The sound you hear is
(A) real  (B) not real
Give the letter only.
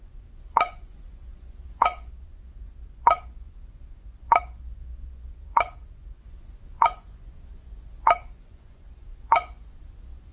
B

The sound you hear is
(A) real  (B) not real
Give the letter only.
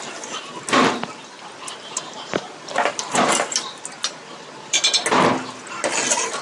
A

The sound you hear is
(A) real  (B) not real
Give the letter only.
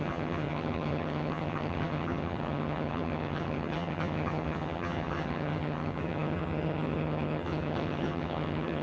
B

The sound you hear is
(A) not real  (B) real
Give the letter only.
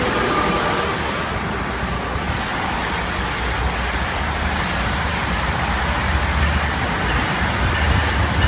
B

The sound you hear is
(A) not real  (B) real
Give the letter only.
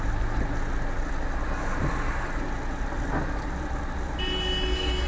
B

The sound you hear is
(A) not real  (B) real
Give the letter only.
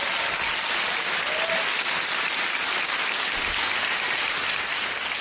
B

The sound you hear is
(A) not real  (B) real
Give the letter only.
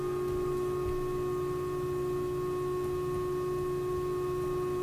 B